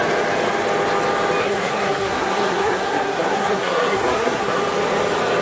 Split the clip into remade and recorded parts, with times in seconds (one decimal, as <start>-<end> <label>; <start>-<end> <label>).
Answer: 0.0-1.4 recorded; 1.4-4.6 remade; 4.6-5.4 recorded